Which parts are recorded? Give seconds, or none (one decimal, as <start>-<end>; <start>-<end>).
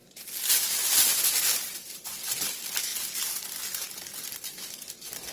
0.0-1.4